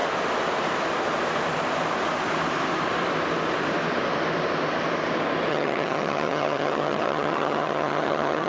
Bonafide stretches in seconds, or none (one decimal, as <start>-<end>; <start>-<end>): 0.0-5.5